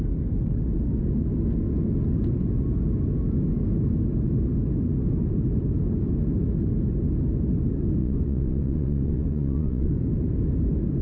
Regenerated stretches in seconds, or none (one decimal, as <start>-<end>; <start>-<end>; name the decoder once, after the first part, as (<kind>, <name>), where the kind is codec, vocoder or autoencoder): 8.0-9.9 (vocoder, Vocos)